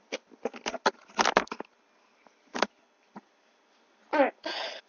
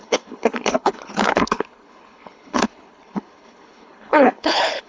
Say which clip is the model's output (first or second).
second